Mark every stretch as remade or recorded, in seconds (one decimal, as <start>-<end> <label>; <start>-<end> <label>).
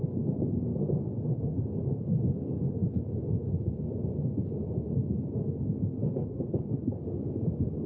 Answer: 0.0-0.7 remade; 0.7-1.8 recorded; 1.8-2.8 remade; 2.8-7.5 recorded; 7.5-7.9 remade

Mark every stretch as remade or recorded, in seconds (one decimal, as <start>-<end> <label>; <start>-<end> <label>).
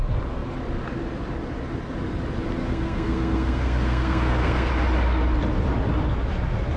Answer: 0.0-2.6 recorded; 2.6-4.7 remade; 4.7-6.8 recorded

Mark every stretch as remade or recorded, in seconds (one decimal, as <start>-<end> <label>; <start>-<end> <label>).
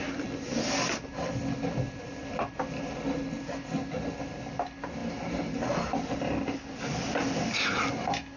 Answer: 0.0-5.0 recorded; 5.0-5.6 remade; 5.6-8.4 recorded